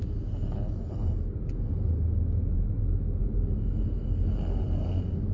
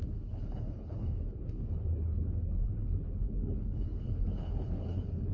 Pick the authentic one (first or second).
first